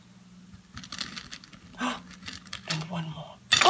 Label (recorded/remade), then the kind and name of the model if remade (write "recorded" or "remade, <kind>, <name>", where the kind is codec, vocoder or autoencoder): recorded